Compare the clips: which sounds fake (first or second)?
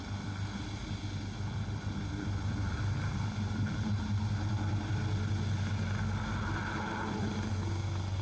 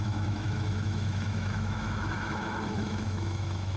second